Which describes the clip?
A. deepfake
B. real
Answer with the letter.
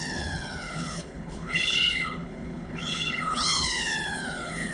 A